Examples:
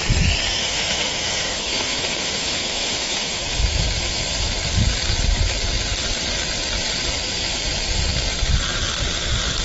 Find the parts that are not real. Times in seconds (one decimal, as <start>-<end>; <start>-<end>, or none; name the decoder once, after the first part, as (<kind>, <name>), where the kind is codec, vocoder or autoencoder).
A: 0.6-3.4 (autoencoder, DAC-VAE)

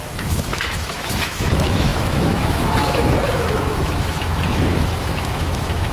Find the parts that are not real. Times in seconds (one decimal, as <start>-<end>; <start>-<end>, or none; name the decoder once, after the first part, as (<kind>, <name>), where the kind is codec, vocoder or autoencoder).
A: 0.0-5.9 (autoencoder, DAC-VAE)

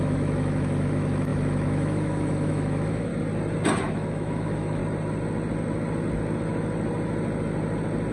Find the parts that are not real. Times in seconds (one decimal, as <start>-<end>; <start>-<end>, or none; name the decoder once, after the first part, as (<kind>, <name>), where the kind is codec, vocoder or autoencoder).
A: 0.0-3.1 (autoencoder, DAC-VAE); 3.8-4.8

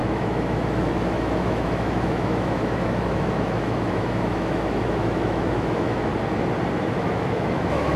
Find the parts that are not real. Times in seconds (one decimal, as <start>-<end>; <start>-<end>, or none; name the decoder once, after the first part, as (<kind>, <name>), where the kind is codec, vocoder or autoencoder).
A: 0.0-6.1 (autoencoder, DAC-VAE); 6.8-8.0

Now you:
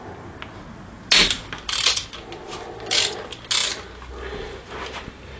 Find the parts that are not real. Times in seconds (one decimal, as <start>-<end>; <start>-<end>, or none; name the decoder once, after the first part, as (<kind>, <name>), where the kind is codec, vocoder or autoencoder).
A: none

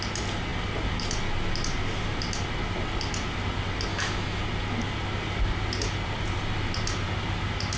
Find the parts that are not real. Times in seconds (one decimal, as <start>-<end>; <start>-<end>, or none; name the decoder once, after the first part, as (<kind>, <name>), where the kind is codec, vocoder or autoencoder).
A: 3.9-4.4 (autoencoder, DAC-VAE)

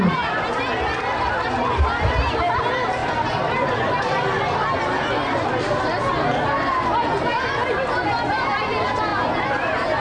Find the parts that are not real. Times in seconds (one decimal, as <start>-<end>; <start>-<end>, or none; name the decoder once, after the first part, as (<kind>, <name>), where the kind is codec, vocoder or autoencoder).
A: none